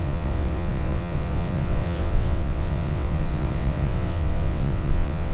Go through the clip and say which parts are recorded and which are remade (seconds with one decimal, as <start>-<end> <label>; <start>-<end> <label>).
0.0-5.3 remade